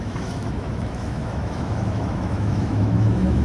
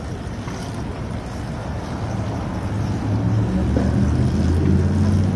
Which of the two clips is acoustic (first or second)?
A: second